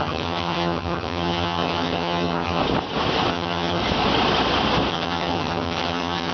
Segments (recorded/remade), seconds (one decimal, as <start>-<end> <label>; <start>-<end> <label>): 0.0-2.6 remade; 2.6-3.3 recorded; 3.3-3.8 remade; 3.8-4.9 recorded; 4.9-6.3 remade